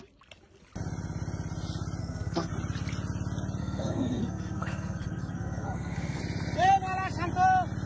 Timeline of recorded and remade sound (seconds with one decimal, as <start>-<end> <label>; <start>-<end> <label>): 0.0-2.0 recorded; 2.0-2.5 remade; 2.5-3.6 recorded; 3.6-6.2 remade; 6.2-7.9 recorded